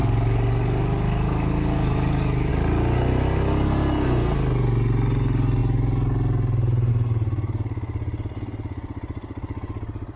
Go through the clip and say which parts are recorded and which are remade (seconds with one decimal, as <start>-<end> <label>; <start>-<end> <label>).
0.0-2.5 remade; 2.5-10.2 recorded